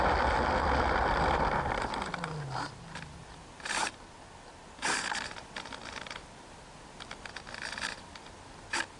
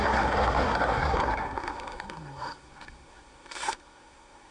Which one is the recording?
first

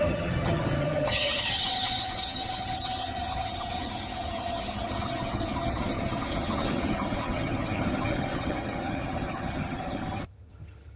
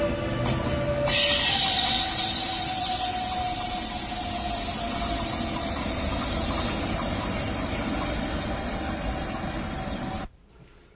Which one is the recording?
second